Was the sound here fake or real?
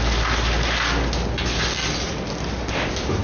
real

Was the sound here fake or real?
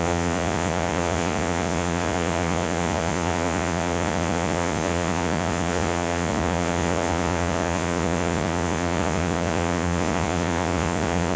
fake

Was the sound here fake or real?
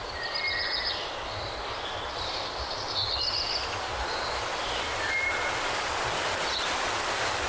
real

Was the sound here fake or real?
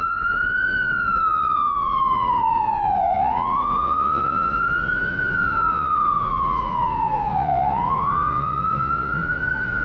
fake